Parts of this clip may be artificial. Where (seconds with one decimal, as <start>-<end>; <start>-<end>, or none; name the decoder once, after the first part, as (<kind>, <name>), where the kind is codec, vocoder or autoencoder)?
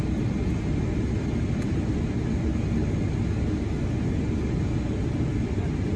none